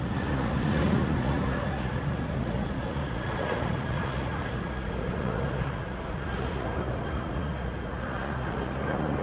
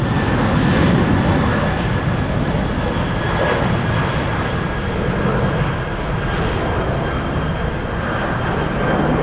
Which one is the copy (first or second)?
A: first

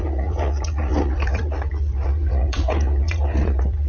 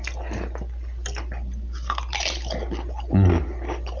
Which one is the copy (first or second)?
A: first